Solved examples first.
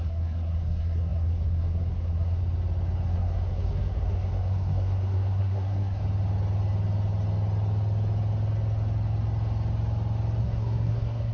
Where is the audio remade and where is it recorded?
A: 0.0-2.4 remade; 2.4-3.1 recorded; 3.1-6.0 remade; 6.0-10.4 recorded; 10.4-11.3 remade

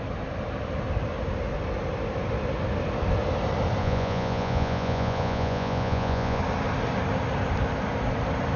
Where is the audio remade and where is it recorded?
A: 0.0-3.8 recorded; 3.8-6.4 remade; 6.4-8.6 recorded

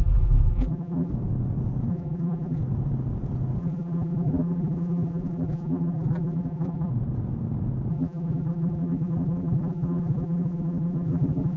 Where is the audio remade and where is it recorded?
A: 0.0-1.1 remade; 1.1-1.9 recorded; 1.9-2.6 remade; 2.6-3.6 recorded; 3.6-6.9 remade; 6.9-7.9 recorded; 7.9-11.6 remade

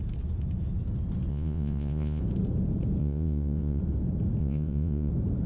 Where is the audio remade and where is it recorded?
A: 0.0-1.3 recorded; 1.3-2.2 remade; 2.2-3.0 recorded; 3.0-3.8 remade; 3.8-4.4 recorded; 4.4-5.1 remade; 5.1-5.5 recorded

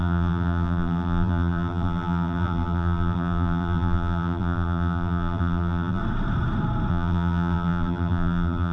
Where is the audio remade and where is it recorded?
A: 0.0-6.0 remade; 6.0-6.9 recorded; 6.9-8.7 remade

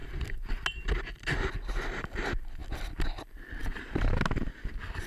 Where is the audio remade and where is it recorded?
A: 0.0-3.6 recorded; 3.6-4.1 remade; 4.1-5.1 recorded